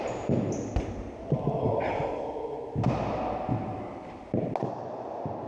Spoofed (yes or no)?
no